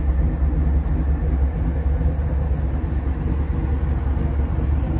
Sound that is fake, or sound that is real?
real